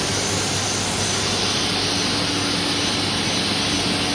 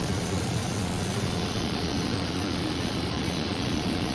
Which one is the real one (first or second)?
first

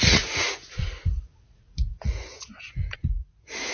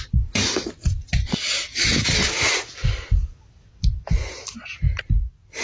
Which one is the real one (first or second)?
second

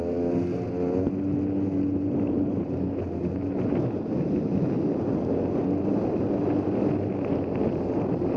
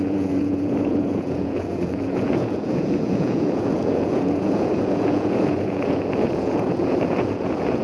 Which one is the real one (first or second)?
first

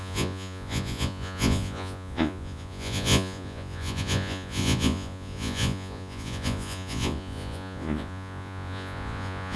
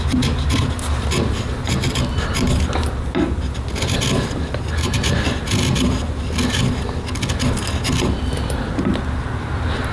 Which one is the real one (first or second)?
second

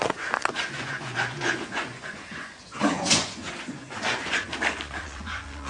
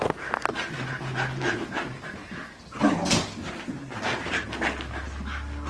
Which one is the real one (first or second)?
second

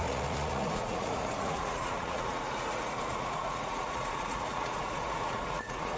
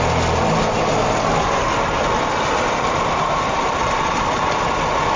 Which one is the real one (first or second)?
second